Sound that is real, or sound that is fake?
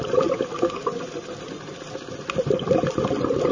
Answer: real